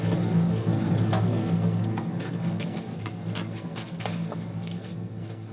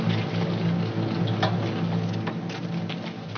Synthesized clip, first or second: first